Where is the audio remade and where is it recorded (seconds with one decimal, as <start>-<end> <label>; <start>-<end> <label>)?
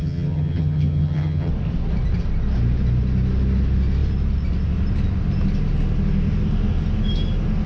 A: 0.0-1.5 remade; 1.5-7.7 recorded